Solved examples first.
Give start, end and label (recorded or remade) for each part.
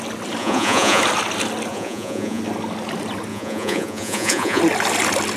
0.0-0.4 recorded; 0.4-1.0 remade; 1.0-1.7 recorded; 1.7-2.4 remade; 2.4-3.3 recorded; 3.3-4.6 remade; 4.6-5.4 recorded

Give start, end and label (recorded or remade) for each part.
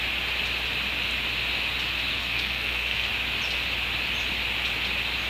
0.0-2.1 recorded; 2.1-3.1 remade; 3.1-5.3 recorded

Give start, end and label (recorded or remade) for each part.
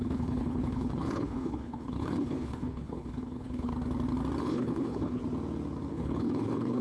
0.0-3.7 remade; 3.7-4.4 recorded; 4.4-5.2 remade; 5.2-5.9 recorded; 5.9-6.8 remade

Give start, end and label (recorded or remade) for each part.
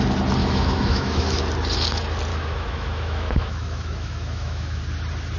0.0-0.4 recorded; 0.4-1.4 remade; 1.4-2.3 recorded; 2.3-4.8 remade; 4.8-5.4 recorded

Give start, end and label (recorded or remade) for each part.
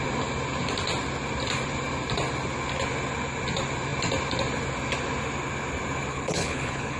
0.0-6.1 recorded; 6.1-7.0 remade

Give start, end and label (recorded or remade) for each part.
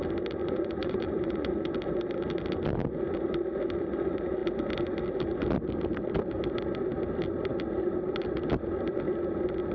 0.0-0.4 recorded; 0.4-1.7 remade; 1.7-9.7 recorded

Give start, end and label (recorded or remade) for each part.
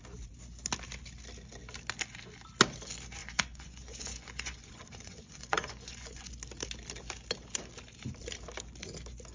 0.0-3.2 recorded; 3.2-6.3 remade; 6.3-9.3 recorded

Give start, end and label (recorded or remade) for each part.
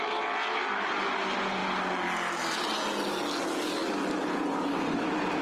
0.0-5.4 recorded